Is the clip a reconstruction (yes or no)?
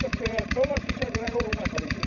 yes